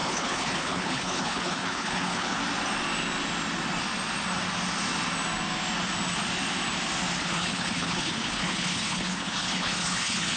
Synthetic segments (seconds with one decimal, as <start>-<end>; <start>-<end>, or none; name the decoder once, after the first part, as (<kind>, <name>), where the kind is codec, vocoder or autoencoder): 0.0-2.4 (codec, HILCodec); 7.2-10.4